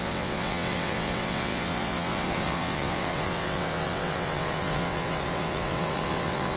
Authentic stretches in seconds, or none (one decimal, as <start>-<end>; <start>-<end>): none